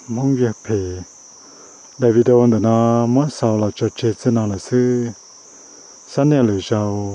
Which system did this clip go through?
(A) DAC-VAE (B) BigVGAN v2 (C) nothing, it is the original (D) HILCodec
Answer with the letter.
C